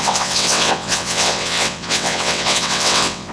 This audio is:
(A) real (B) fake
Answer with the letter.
B